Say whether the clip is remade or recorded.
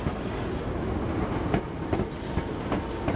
recorded